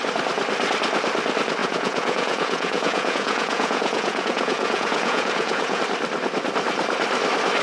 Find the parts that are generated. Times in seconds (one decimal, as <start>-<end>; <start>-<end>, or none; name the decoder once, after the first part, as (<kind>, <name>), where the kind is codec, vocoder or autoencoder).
1.6-5.8 (vocoder, Vocos)

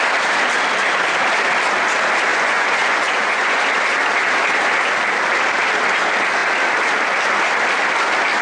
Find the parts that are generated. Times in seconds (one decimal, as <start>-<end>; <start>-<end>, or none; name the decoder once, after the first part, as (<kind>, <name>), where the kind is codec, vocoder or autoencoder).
2.3-3.6 (vocoder, Vocos)

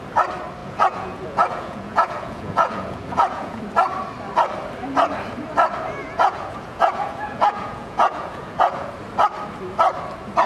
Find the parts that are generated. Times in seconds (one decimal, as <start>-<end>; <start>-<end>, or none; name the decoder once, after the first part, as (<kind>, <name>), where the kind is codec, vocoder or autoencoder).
0.6-3.6 (vocoder, Vocos); 6.0-8.9